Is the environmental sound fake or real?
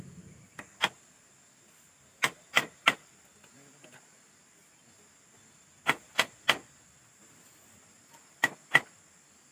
real